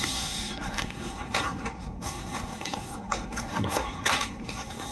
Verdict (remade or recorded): remade